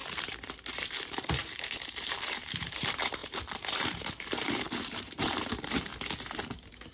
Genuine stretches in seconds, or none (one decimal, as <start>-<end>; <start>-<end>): 5.9-6.9